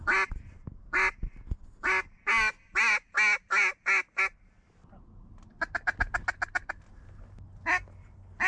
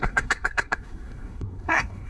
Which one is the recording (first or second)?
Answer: first